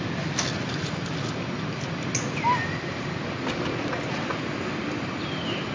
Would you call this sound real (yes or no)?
yes